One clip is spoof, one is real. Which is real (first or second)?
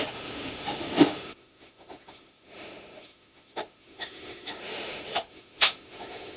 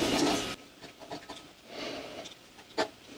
second